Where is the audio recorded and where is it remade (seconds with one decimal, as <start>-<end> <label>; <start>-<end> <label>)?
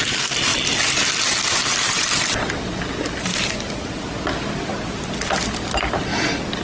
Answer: 0.0-3.3 recorded; 3.3-4.1 remade; 4.1-6.6 recorded